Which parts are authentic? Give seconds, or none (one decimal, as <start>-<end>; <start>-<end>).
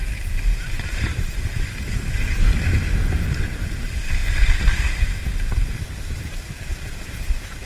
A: 4.2-6.0